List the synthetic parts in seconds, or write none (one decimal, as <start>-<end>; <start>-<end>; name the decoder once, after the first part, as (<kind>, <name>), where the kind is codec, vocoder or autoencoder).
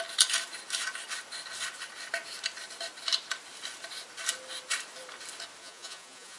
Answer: 5.6-6.4 (vocoder, Vocos)